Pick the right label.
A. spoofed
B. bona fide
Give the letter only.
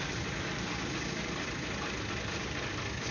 B